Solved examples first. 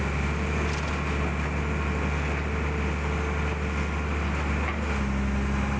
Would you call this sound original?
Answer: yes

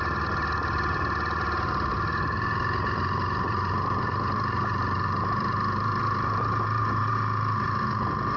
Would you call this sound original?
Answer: yes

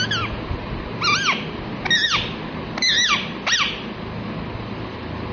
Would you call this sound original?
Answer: yes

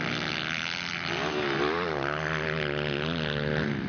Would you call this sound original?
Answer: yes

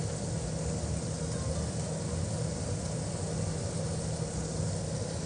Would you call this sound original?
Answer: yes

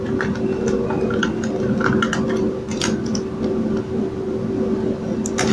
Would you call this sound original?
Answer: yes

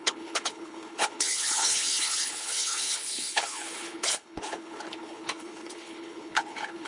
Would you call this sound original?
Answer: no